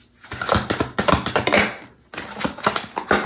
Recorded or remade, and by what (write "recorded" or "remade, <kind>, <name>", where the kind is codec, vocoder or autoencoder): recorded